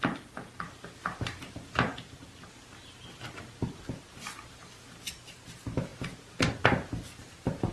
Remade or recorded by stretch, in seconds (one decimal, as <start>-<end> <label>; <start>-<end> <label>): 0.0-7.7 recorded